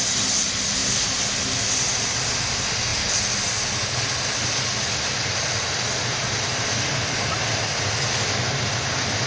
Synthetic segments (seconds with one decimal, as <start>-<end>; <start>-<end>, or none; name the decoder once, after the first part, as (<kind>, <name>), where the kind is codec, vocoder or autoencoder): none